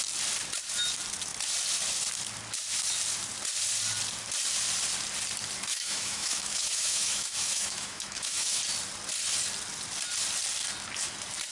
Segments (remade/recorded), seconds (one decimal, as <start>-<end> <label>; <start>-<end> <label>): 0.0-5.7 recorded; 5.7-8.6 remade; 8.6-11.5 recorded